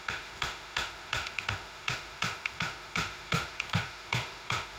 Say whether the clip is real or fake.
fake